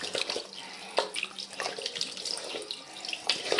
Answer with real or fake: real